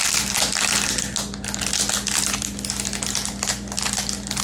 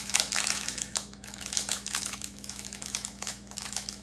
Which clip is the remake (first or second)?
second